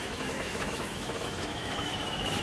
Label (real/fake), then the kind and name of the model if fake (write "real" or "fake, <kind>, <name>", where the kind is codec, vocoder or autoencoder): fake, autoencoder, DAC-VAE